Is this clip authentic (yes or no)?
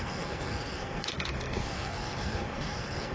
no